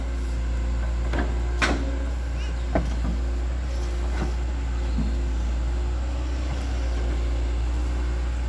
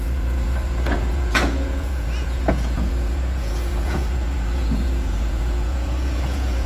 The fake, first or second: second